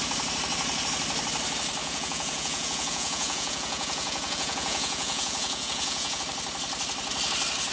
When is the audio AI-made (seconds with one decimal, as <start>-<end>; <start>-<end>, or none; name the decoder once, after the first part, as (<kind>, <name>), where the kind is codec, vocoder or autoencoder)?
1.8-6.2 (vocoder, Vocos)